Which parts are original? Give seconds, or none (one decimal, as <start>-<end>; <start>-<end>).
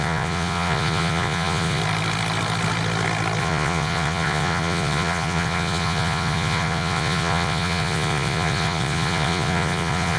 1.8-3.4